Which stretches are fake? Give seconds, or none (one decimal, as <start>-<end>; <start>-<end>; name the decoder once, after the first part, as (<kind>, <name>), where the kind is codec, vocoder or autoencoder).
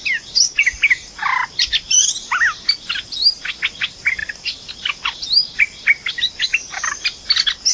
none